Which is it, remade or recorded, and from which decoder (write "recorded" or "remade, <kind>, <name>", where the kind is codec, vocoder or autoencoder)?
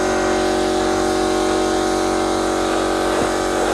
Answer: recorded